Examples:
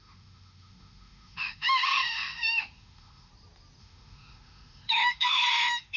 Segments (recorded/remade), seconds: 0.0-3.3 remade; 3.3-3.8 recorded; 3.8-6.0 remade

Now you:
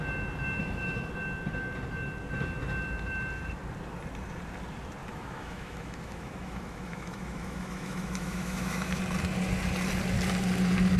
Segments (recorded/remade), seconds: 0.0-0.6 recorded; 0.6-1.1 remade; 1.1-5.0 recorded; 5.0-9.0 remade; 9.0-11.0 recorded

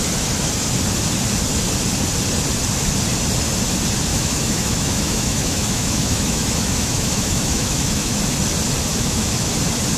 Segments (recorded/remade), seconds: 0.0-4.1 recorded; 4.1-8.2 remade; 8.2-8.9 recorded; 8.9-9.5 remade; 9.5-10.0 recorded

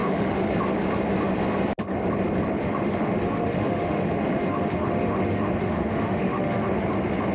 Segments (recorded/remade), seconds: 0.0-0.5 remade; 0.5-2.6 recorded; 2.6-6.8 remade; 6.8-7.3 recorded

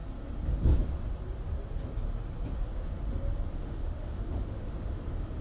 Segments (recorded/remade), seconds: 0.0-3.6 recorded; 3.6-5.0 remade; 5.0-5.4 recorded